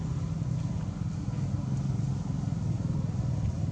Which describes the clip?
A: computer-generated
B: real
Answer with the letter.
B